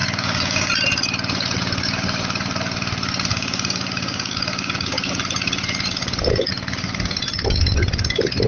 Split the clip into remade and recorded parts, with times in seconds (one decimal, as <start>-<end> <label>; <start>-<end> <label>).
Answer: 0.0-0.7 remade; 0.7-3.3 recorded; 3.3-5.2 remade; 5.2-8.5 recorded